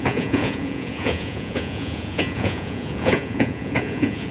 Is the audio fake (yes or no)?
yes